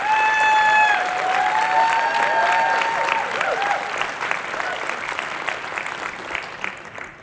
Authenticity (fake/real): real